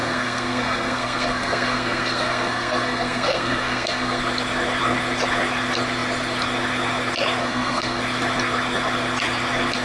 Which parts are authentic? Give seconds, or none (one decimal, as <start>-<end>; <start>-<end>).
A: 4.2-7.4; 8.0-9.8